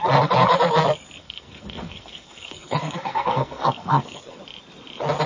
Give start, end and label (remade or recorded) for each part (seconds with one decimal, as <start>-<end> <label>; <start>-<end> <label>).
0.0-1.2 recorded; 1.2-4.4 remade; 4.4-5.3 recorded